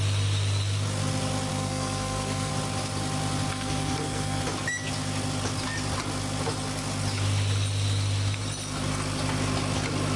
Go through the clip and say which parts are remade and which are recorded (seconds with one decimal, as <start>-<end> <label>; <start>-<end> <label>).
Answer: 0.0-1.5 recorded; 1.5-2.5 remade; 2.5-3.5 recorded; 3.5-4.4 remade; 4.4-10.2 recorded